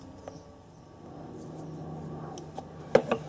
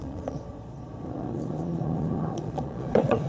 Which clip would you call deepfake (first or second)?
second